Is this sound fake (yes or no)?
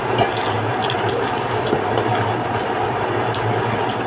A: no